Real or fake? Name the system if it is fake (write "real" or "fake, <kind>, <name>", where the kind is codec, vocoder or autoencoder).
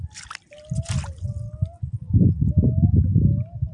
real